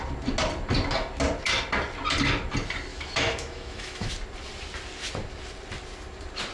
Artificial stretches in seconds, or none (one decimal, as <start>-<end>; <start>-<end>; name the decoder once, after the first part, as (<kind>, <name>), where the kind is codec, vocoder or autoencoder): 2.9-4.1 (autoencoder, DAC-VAE)